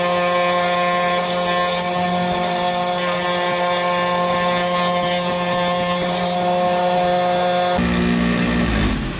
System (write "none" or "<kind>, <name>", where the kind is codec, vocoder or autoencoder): none